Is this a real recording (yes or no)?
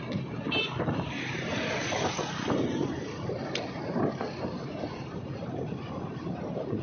no